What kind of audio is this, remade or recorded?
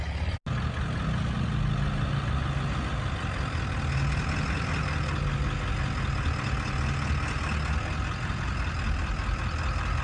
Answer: recorded